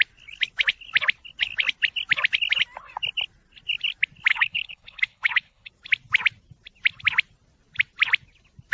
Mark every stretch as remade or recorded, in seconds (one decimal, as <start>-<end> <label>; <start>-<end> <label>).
0.0-4.3 recorded; 4.3-5.7 remade; 5.7-8.7 recorded

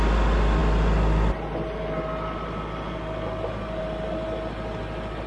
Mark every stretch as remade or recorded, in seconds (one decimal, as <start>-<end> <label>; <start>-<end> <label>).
0.0-5.3 recorded